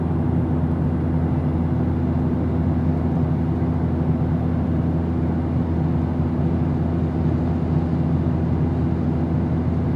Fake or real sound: real